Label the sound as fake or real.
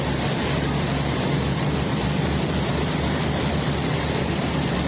fake